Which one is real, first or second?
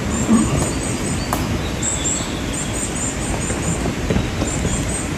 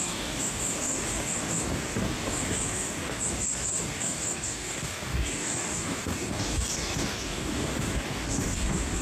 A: first